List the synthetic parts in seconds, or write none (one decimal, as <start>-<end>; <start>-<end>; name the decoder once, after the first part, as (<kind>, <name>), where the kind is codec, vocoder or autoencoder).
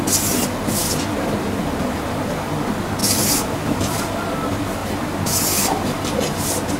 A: 3.0-4.0 (vocoder, BigVGAN v2)